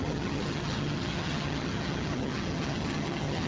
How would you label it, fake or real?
fake